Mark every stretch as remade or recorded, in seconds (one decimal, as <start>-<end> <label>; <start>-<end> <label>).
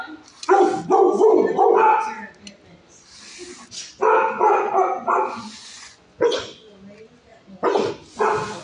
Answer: 0.0-4.5 recorded; 4.5-6.6 remade; 6.6-8.6 recorded